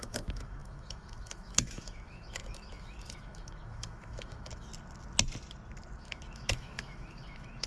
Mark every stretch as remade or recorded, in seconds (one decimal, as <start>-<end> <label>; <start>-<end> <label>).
0.0-4.7 remade; 4.7-6.0 recorded; 6.0-7.7 remade